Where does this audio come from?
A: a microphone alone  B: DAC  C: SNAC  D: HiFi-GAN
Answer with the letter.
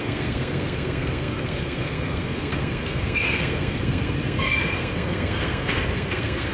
C